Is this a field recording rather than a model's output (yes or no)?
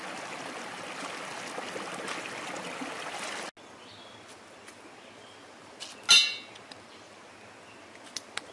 yes